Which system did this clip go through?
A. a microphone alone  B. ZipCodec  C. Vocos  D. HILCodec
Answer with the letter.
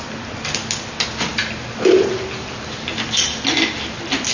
A